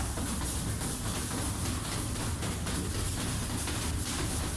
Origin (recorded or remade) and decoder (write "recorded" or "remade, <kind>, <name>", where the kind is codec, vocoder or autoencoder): recorded